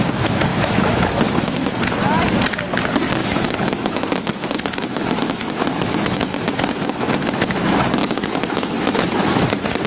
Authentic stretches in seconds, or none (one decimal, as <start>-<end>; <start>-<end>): 0.0-0.5; 1.7-3.2; 7.1-8.0; 9.5-9.9